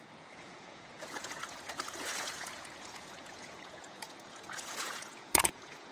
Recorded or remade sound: remade